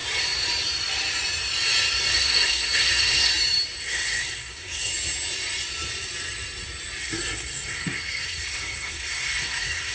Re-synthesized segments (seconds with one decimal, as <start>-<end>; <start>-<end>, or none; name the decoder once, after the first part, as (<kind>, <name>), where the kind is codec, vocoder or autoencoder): 2.1-3.3 (codec, SNAC); 3.8-4.9; 7.0-9.9